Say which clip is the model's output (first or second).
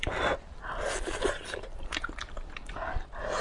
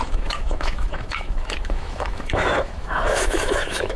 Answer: second